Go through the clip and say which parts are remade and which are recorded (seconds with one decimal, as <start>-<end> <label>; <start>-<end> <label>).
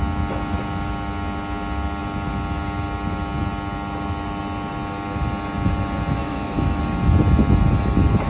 0.0-6.2 recorded; 6.2-6.8 remade; 6.8-8.3 recorded